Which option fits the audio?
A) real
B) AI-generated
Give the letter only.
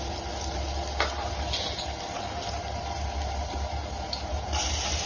A